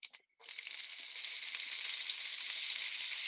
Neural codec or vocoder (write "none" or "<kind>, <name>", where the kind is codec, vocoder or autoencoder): none